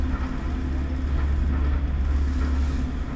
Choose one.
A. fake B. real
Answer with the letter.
B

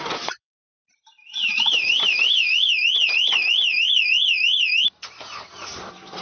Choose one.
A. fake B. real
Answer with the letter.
A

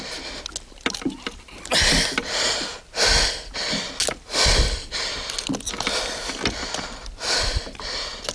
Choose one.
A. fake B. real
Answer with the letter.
B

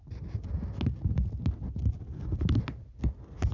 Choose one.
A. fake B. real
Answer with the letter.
B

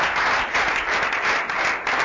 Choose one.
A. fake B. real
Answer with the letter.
A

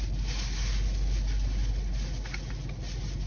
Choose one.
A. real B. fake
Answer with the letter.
A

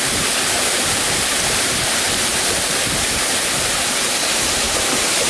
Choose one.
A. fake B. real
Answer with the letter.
A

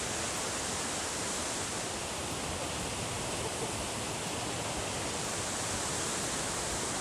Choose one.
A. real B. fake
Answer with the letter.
B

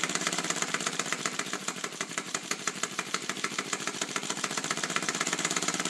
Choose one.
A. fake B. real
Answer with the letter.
A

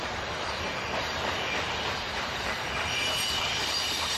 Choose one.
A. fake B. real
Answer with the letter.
A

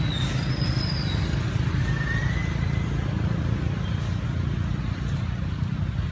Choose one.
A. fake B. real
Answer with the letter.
B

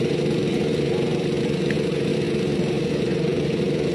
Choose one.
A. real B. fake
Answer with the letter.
B